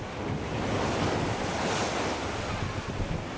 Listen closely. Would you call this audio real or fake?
real